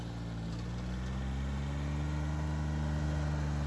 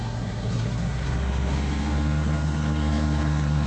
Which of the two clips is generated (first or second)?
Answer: second